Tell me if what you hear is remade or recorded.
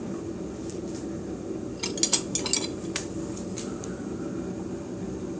recorded